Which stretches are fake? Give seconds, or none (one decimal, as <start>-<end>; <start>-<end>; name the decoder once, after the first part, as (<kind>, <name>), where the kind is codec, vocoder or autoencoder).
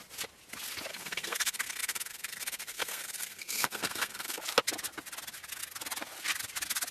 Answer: 0.9-4.4 (codec, SNAC)